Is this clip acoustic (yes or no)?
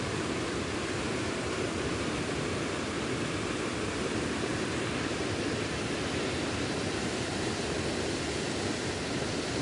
no